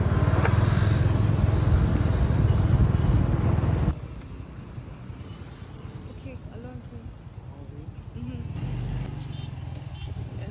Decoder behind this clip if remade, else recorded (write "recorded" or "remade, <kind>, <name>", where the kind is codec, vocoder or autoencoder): recorded